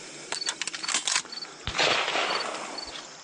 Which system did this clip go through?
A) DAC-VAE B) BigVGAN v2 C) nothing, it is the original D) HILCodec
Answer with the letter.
C